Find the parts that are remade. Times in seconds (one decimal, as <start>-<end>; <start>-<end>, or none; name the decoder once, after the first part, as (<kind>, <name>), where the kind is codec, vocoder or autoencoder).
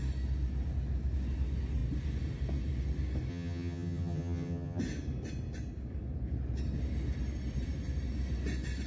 3.3-4.8 (vocoder, HiFi-GAN)